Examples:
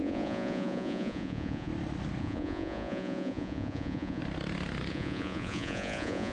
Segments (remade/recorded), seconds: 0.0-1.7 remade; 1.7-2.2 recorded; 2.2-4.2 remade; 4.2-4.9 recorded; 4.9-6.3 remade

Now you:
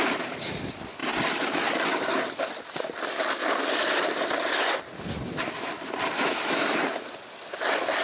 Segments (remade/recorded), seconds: 0.0-8.0 recorded

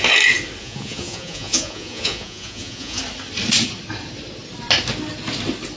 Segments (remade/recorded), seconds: 0.0-0.6 recorded; 0.6-3.0 remade; 3.0-5.8 recorded